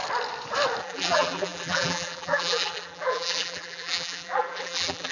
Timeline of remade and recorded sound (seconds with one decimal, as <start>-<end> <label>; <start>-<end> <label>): 0.0-0.8 recorded; 0.8-5.1 remade